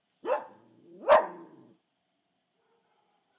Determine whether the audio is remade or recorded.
recorded